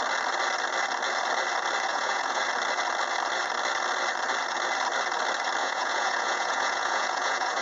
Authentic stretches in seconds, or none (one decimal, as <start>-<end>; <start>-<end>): 0.0-1.9; 2.4-5.6